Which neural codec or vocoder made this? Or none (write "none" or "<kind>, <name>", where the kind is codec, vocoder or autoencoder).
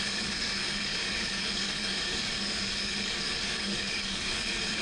codec, DAC